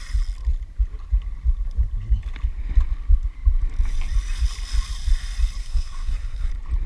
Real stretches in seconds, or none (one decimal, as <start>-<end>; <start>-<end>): 0.0-5.6; 6.5-6.9